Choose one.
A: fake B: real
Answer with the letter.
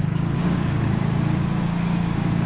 A